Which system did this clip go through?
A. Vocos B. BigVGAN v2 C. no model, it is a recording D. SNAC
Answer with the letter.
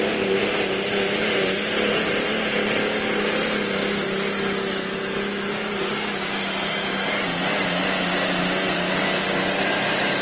C